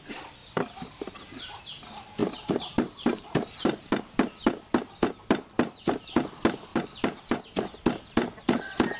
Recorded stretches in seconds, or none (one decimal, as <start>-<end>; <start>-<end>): 0.0-0.4; 1.6-2.2; 4.0-6.7; 7.4-9.0